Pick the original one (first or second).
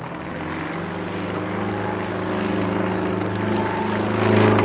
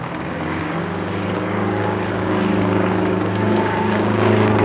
first